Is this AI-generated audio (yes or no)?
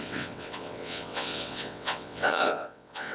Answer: yes